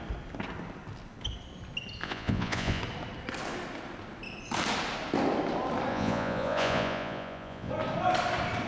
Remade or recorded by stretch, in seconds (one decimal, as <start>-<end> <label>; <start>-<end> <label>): 0.0-2.0 recorded; 2.0-2.8 remade; 2.8-5.9 recorded; 5.9-7.7 remade; 7.7-8.7 recorded